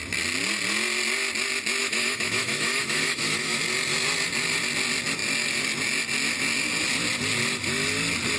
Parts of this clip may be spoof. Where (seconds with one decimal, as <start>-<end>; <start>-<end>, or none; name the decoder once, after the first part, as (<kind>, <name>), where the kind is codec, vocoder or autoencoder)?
1.8-3.6 (autoencoder, DAC-VAE)